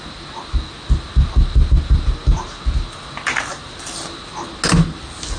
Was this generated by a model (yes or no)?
no